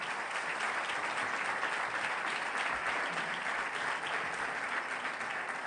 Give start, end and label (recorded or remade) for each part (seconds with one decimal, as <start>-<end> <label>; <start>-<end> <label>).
0.0-5.7 recorded